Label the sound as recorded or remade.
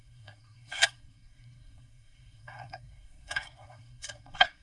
remade